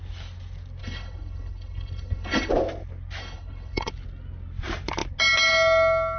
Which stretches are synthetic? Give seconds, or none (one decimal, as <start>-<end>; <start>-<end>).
0.8-2.5; 3.2-3.9